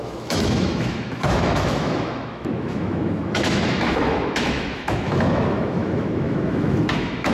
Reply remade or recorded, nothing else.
remade